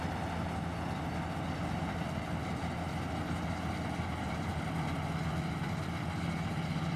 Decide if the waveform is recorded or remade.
recorded